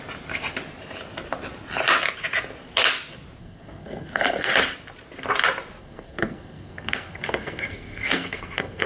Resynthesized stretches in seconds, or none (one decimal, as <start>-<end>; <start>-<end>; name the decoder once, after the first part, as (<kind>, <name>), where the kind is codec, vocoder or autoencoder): 3.4-4.5 (codec, SNAC); 5.8-8.9